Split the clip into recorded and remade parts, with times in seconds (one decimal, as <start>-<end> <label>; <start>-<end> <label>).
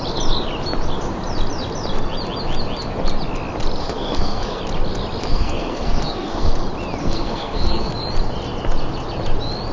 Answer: 0.0-3.8 recorded; 3.8-4.6 remade; 4.6-5.2 recorded; 5.2-6.5 remade; 6.5-7.0 recorded; 7.0-7.9 remade; 7.9-9.7 recorded